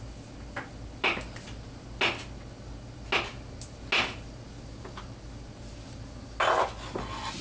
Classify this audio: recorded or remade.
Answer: recorded